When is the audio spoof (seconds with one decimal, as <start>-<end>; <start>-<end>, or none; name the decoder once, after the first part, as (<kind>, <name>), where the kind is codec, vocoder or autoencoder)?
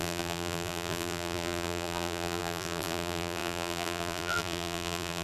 0.0-5.2 (vocoder, BigVGAN v2)